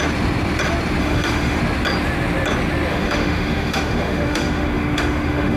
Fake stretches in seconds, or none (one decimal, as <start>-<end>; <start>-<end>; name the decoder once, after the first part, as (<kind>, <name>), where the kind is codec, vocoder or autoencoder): 1.0-1.6 (autoencoder, DAC-VAE); 2.9-5.6